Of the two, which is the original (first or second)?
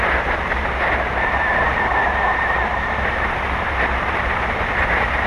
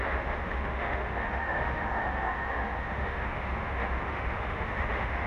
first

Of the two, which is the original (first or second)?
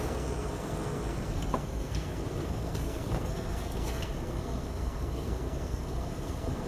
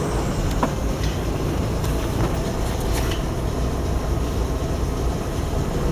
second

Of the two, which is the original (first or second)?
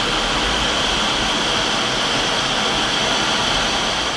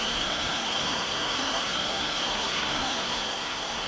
first